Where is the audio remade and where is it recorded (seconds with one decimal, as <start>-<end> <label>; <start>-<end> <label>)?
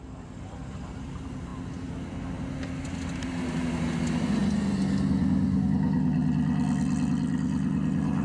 0.0-8.2 recorded